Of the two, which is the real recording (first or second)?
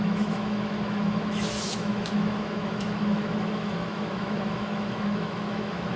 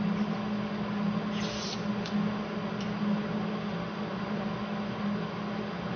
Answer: second